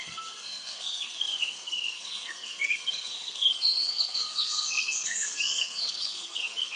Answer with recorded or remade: remade